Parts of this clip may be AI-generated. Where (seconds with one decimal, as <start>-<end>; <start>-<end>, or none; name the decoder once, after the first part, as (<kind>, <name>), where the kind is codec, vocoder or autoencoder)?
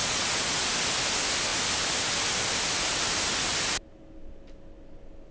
0.0-0.7 (vocoder, Vocos)